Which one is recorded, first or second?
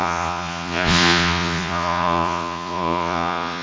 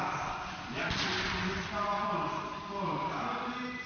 second